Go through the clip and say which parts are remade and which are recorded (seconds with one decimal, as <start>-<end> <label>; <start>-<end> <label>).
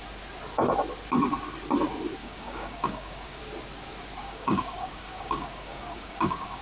0.0-2.2 recorded; 2.2-3.4 remade; 3.4-4.2 recorded; 4.2-6.6 remade